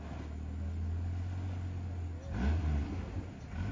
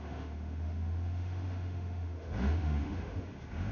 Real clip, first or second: first